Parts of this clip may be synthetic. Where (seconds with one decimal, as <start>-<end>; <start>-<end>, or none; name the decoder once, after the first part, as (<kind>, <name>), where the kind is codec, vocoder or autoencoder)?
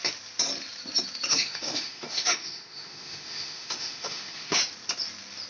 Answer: 1.3-4.6 (autoencoder, DAC-VAE)